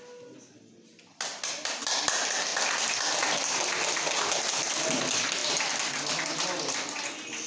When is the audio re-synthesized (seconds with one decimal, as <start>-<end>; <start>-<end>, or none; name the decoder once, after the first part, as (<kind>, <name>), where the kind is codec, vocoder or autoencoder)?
none